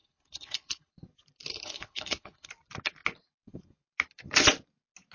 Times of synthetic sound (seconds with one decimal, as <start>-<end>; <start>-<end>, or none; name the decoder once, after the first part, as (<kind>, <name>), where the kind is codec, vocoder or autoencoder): 0.0-0.9 (codec, HILCodec); 1.5-2.5